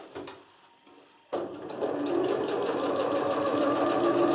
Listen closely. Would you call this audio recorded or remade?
recorded